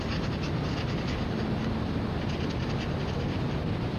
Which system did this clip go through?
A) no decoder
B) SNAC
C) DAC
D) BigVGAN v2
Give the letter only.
A